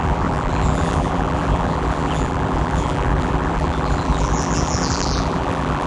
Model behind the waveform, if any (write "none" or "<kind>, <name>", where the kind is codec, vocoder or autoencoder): vocoder, BigVGAN v2